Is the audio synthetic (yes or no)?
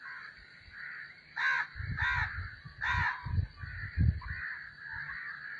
no